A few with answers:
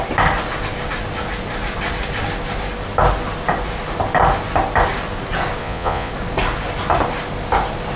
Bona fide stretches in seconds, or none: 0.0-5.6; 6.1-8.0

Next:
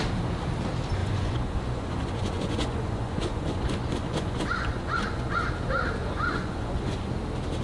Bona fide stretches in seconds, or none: 0.0-1.0; 5.5-6.0; 7.1-7.6

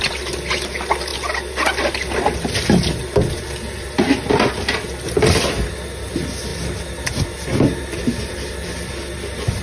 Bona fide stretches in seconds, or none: 0.0-9.6

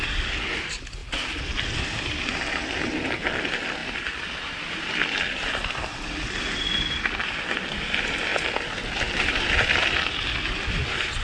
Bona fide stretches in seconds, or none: 0.0-11.2

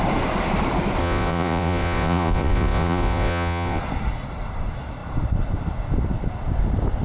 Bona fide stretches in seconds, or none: 0.0-1.0; 3.8-7.0

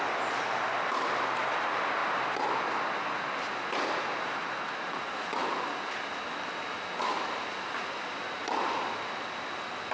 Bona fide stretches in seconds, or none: 0.0-9.9

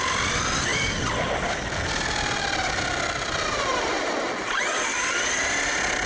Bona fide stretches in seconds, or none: 0.0-6.1

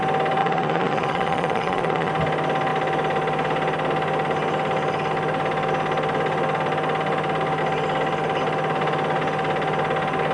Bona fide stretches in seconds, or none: 0.0-0.4; 2.1-10.3